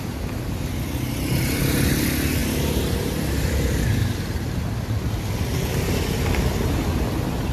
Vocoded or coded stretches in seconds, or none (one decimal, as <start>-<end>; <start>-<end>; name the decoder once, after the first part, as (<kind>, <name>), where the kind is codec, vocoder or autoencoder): none